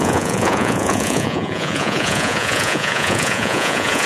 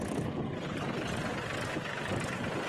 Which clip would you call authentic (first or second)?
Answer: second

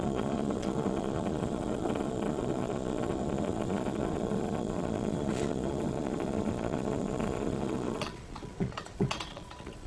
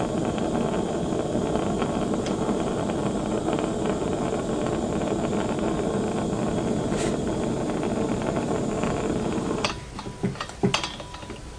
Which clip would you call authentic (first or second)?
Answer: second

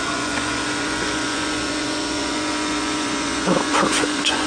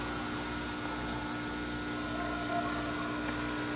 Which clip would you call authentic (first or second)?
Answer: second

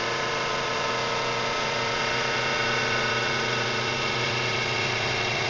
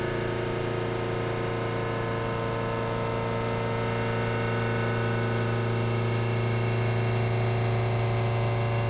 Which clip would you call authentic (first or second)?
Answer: second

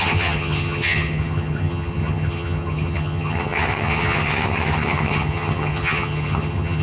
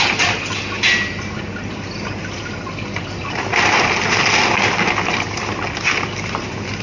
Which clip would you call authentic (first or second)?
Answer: second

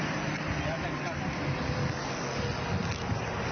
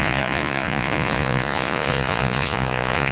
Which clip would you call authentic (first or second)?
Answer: first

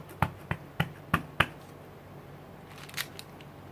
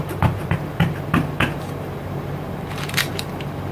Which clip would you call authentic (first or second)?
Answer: first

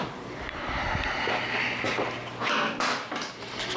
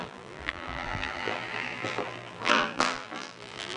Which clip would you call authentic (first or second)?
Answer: first